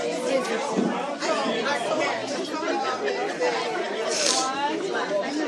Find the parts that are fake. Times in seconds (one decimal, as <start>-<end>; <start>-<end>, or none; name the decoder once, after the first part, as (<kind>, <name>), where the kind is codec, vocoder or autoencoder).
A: 0.0-1.4 (vocoder, BigVGAN v2); 1.9-3.2; 4.7-5.5